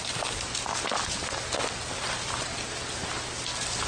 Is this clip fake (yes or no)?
no